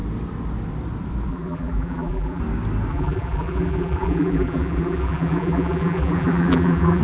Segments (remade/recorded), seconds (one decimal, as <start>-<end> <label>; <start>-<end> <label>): 0.0-1.3 recorded; 1.3-2.4 remade; 2.4-2.9 recorded; 2.9-7.0 remade